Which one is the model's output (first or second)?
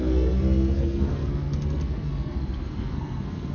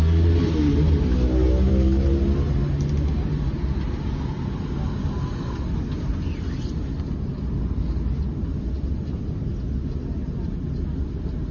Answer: first